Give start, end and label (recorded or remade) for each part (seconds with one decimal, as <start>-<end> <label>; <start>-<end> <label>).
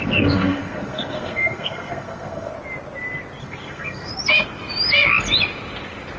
0.0-2.5 remade; 2.5-3.4 recorded; 3.4-4.1 remade; 4.1-6.2 recorded